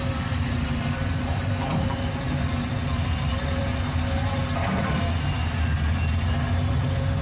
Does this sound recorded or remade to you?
recorded